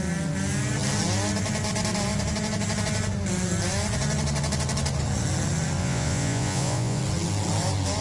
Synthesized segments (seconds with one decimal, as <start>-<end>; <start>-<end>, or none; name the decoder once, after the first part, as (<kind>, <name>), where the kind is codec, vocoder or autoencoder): 5.8-7.0 (vocoder, Vocos)